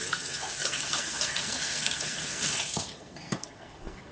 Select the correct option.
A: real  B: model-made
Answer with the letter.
B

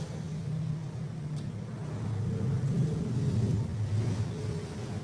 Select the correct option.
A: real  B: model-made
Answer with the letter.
A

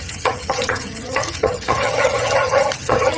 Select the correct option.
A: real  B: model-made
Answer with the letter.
B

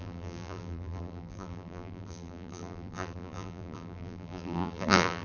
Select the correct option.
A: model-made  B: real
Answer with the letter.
A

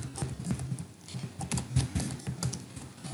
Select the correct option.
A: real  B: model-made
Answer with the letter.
A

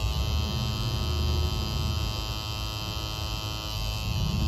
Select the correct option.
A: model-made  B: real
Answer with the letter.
B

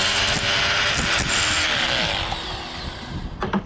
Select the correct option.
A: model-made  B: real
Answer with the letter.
B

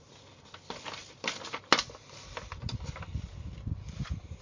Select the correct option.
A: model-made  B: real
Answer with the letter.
B